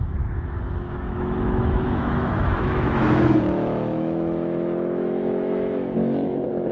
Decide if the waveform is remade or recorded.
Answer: remade